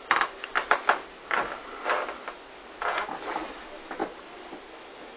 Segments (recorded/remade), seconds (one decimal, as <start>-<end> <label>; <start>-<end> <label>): 0.0-0.5 remade; 0.5-3.6 recorded; 3.6-4.0 remade; 4.0-4.7 recorded; 4.7-5.2 remade